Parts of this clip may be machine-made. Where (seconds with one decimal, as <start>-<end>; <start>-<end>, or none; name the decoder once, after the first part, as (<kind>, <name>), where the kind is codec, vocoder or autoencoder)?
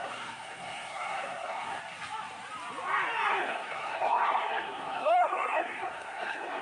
0.0-1.8 (codec, SNAC); 3.3-6.6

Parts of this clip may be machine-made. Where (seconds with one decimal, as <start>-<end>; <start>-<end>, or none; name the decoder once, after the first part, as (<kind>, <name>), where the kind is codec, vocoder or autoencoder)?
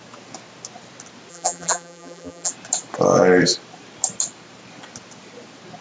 1.3-2.5 (vocoder, BigVGAN v2)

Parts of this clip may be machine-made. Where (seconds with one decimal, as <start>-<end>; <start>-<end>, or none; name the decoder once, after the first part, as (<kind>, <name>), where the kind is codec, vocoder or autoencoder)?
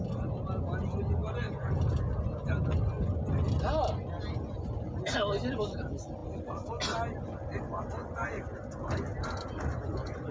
none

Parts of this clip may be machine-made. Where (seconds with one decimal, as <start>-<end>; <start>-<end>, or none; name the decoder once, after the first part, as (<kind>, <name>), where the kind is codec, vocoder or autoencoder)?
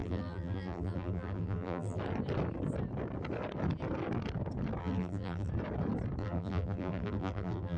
0.0-2.0 (vocoder, BigVGAN v2); 4.8-5.5; 6.2-7.8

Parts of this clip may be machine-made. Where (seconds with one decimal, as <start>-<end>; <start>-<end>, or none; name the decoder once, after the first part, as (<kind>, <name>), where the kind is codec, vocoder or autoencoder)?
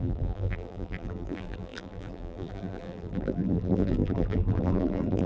0.0-5.3 (vocoder, BigVGAN v2)